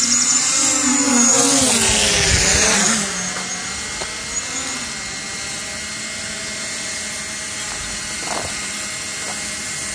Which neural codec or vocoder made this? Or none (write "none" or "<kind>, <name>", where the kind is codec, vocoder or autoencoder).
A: none